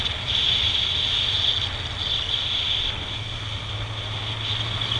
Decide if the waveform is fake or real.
real